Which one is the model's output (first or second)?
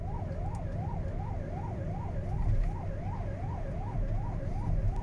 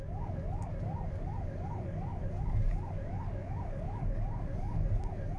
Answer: second